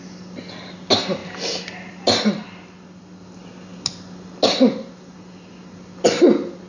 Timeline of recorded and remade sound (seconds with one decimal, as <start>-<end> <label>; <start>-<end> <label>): 0.0-6.7 recorded